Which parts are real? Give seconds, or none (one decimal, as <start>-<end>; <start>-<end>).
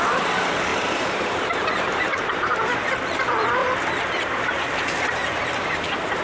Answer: 0.0-0.7; 2.5-6.2